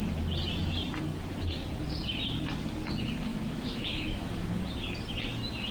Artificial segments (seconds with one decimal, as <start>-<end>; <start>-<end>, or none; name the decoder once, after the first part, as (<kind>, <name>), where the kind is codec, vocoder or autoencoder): 3.3-4.6 (autoencoder, DAC-VAE)